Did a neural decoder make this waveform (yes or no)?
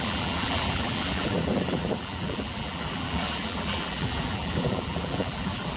yes